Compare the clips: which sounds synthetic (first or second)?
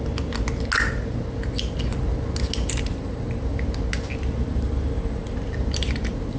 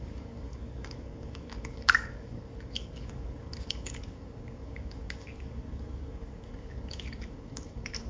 second